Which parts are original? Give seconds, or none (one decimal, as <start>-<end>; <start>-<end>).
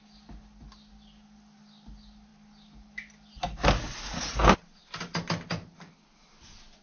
0.0-6.8